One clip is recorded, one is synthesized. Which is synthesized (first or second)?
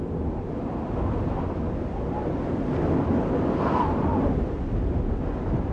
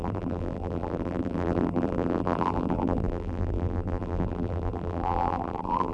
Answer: second